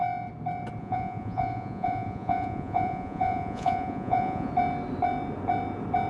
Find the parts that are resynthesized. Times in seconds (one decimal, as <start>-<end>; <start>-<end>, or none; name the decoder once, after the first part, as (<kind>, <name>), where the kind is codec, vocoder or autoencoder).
0.8-4.5 (vocoder, Vocos)